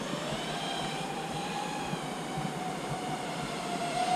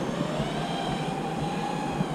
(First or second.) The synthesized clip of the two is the first